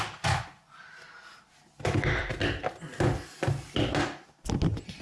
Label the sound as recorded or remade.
recorded